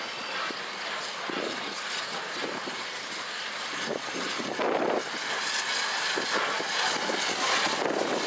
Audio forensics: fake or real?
real